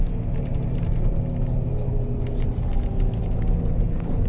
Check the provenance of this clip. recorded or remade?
recorded